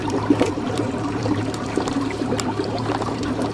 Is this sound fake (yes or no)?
yes